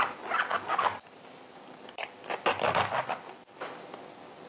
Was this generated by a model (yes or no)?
no